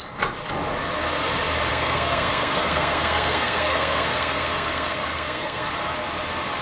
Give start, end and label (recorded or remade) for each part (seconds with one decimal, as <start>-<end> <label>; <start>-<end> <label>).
0.0-1.7 recorded; 1.7-5.7 remade; 5.7-6.6 recorded